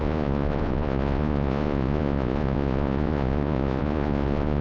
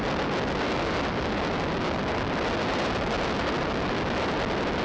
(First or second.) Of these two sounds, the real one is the second